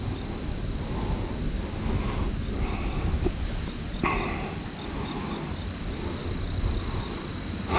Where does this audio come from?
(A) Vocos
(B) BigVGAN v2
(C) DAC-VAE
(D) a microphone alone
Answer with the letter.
D